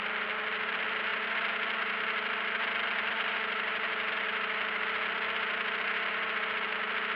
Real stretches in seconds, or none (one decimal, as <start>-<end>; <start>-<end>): 0.0-7.2